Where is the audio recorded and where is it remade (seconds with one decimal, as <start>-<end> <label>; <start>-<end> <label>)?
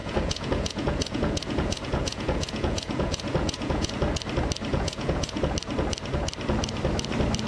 0.0-3.9 remade; 3.9-4.7 recorded; 4.7-5.4 remade; 5.4-7.5 recorded